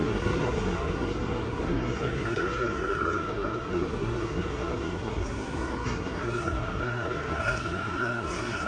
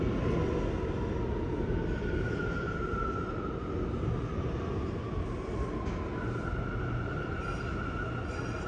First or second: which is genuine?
second